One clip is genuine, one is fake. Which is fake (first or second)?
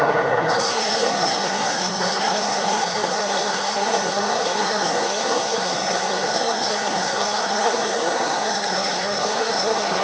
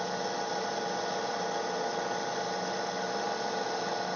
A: first